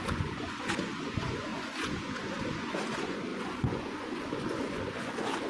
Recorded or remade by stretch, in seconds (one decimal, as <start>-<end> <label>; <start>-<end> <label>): 0.0-5.5 remade